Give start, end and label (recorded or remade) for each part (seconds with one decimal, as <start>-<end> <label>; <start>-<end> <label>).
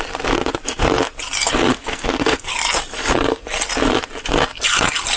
0.0-1.7 recorded; 1.7-2.5 remade; 2.5-5.2 recorded